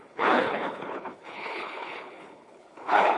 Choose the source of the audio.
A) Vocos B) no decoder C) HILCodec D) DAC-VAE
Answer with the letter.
C